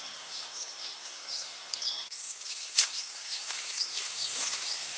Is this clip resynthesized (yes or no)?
yes